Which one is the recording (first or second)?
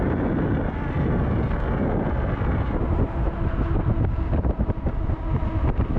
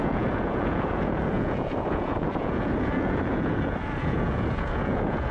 first